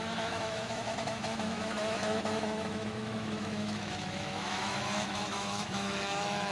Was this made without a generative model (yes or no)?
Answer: no